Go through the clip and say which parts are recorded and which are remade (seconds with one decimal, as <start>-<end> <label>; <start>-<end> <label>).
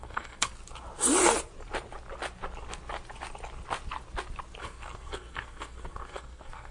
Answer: 0.0-0.6 remade; 0.6-4.6 recorded; 4.6-6.7 remade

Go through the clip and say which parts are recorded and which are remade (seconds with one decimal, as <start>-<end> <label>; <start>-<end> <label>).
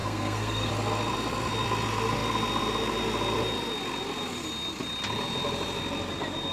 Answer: 0.0-0.7 remade; 0.7-6.5 recorded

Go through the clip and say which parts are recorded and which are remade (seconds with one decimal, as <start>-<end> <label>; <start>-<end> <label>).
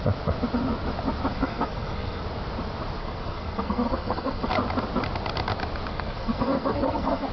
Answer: 0.0-1.3 recorded; 1.3-2.2 remade; 2.2-3.0 recorded; 3.0-4.5 remade; 4.5-5.9 recorded; 5.9-7.3 remade